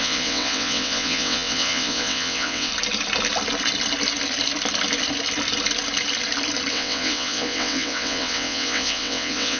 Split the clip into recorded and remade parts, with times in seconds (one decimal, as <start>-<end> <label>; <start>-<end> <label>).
0.0-2.7 remade; 2.7-6.7 recorded; 6.7-9.6 remade

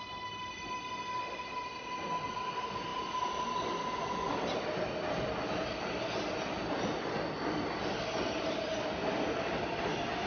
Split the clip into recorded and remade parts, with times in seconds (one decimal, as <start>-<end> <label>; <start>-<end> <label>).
0.0-10.3 recorded

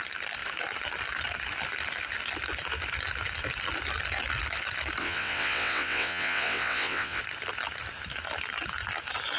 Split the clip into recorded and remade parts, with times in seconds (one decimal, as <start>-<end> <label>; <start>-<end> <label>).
0.0-5.0 recorded; 5.0-7.2 remade; 7.2-9.4 recorded

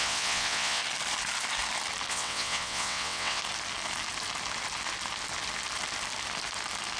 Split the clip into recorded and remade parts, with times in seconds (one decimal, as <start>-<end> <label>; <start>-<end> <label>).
0.0-0.8 remade; 0.8-2.1 recorded; 2.1-3.4 remade; 3.4-7.0 recorded

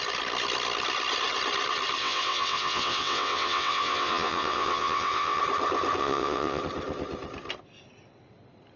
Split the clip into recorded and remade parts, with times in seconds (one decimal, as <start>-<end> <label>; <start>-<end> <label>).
0.0-2.0 recorded; 2.0-5.4 remade; 5.4-6.0 recorded; 6.0-6.6 remade; 6.6-8.8 recorded